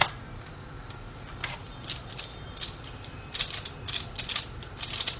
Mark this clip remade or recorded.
recorded